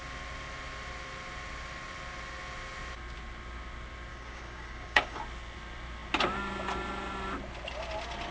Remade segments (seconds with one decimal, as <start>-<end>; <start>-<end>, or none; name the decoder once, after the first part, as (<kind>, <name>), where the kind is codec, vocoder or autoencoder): 4.1-5.2 (codec, DAC)